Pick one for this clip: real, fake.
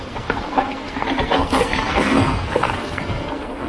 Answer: fake